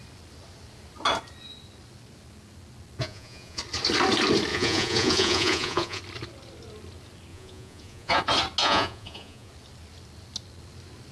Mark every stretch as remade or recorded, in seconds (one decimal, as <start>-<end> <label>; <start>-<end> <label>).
0.0-3.0 recorded; 3.0-3.6 remade; 3.6-4.5 recorded; 4.5-6.0 remade; 6.0-7.3 recorded; 7.3-8.2 remade; 8.2-8.6 recorded; 8.6-9.5 remade; 9.5-11.1 recorded